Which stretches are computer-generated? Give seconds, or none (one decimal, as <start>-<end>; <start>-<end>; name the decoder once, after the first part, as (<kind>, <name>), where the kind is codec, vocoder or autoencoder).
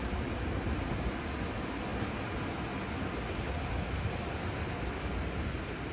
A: none